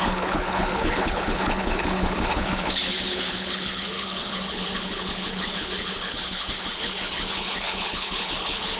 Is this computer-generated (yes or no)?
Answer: yes